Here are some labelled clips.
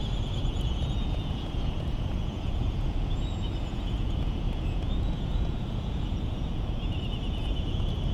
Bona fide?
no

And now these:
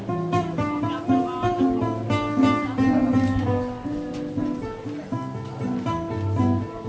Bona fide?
yes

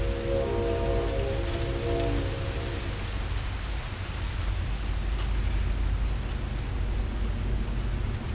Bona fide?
yes